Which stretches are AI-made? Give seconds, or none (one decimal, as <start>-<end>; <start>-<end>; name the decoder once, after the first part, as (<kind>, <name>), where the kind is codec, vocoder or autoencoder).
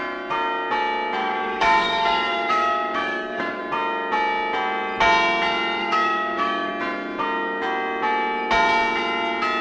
1.2-3.6 (codec, DAC); 5.8-6.7